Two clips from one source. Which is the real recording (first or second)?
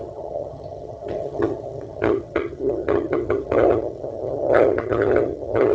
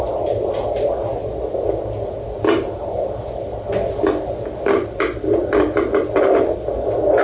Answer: second